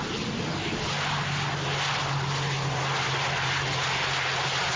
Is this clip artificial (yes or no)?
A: no